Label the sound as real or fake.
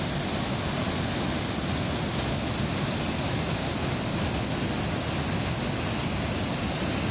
real